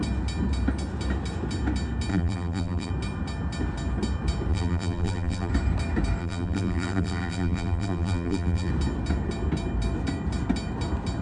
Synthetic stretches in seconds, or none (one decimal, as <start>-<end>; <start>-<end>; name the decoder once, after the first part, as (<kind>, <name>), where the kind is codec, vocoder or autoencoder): 2.1-2.9 (vocoder, BigVGAN v2); 4.5-5.5; 6.2-8.7